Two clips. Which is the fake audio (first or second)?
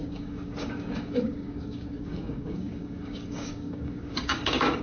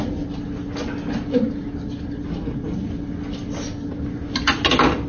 first